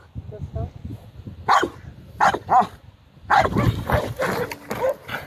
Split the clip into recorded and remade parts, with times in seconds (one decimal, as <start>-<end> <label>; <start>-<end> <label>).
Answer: 0.0-5.3 recorded